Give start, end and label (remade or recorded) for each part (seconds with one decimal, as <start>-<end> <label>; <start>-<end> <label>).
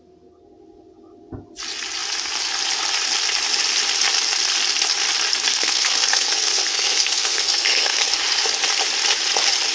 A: 0.0-5.5 recorded; 5.5-8.1 remade; 8.1-9.7 recorded